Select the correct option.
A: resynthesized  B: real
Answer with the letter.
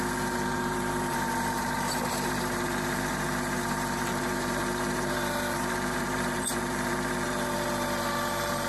A